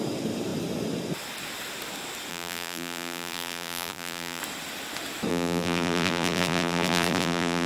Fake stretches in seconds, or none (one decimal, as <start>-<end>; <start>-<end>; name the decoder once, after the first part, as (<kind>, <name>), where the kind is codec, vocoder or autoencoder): 2.3-4.4 (vocoder, BigVGAN v2); 5.3-7.7